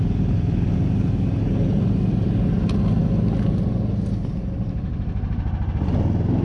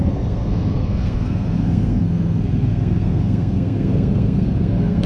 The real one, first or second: first